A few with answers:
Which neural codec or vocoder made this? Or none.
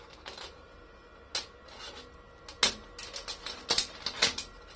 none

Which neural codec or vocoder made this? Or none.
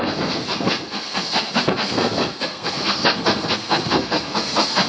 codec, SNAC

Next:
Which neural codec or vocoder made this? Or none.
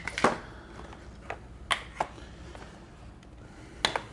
none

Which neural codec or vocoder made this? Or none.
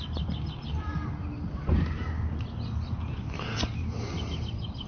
none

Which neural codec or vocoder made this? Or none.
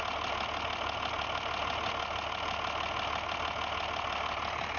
none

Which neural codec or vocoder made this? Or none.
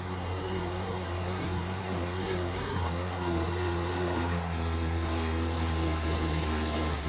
codec, SNAC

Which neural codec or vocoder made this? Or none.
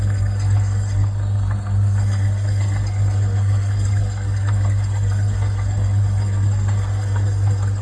codec, SNAC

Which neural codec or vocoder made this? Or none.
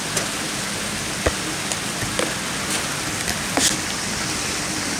none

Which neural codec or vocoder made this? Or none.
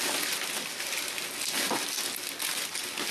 none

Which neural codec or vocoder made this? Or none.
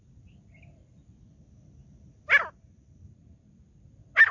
none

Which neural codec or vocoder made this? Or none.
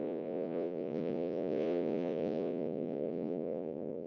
vocoder, Vocos